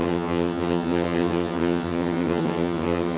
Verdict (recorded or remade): remade